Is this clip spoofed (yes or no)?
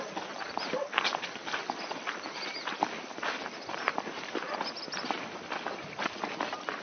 no